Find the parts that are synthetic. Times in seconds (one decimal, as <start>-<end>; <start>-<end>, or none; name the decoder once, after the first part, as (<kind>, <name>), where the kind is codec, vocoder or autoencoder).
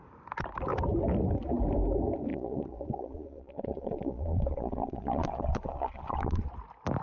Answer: 2.3-6.5 (vocoder, Vocos)